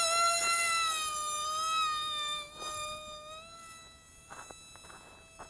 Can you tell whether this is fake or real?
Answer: real